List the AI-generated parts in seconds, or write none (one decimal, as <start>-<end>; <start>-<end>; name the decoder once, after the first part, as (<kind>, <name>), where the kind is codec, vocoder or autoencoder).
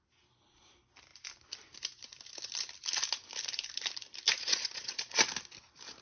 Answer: 4.4-5.2 (vocoder, Vocos)